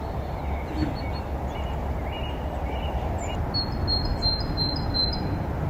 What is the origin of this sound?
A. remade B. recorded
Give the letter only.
B